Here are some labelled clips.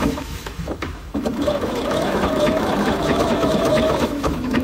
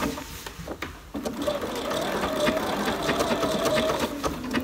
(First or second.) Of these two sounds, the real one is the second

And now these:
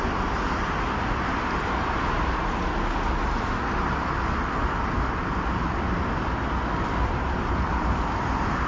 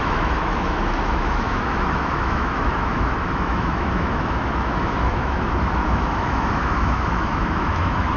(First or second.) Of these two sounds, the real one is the first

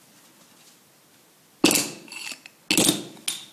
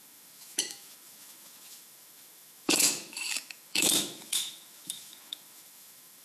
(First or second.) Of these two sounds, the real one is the first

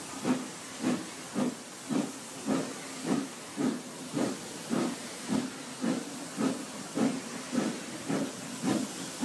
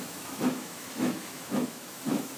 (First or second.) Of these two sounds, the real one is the first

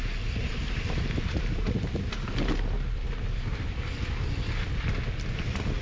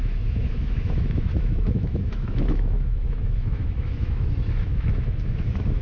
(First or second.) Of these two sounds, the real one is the first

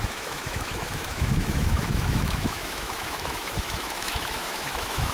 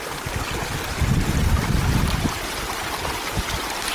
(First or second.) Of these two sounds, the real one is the second